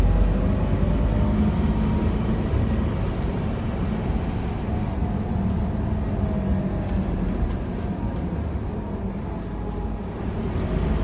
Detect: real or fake real